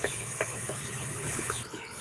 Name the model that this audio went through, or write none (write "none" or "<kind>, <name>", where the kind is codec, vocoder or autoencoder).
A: codec, HILCodec